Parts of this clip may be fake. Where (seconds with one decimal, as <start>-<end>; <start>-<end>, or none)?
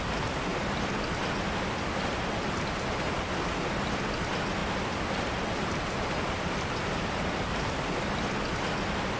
none